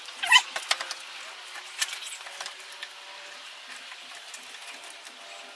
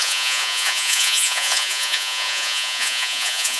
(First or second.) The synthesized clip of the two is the second